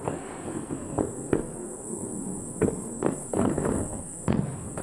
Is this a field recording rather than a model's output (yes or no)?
no